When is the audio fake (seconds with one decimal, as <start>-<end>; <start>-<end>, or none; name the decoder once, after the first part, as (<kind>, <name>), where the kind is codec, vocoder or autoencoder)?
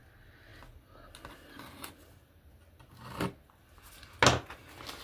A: none